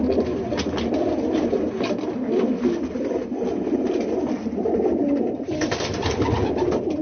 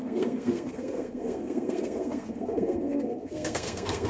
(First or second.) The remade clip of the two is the second